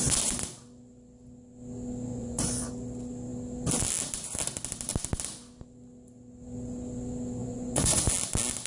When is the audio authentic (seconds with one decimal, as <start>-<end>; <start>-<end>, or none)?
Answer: 0.0-2.1; 2.7-7.4; 8.1-8.7